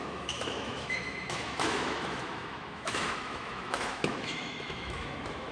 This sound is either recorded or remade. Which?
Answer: remade